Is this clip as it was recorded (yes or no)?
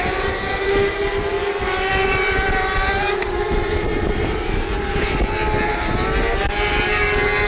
no